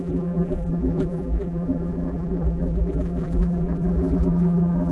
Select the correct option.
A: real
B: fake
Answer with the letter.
B